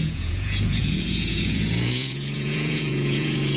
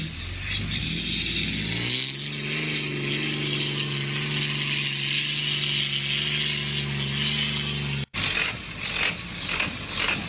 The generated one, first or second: first